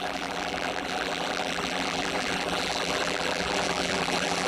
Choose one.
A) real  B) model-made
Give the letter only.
B